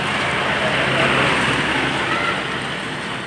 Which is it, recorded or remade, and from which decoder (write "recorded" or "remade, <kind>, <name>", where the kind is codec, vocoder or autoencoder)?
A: recorded